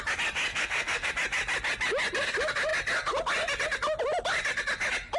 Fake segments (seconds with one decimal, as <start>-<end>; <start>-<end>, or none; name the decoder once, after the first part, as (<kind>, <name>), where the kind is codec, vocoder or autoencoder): 0.5-1.1 (codec, SNAC)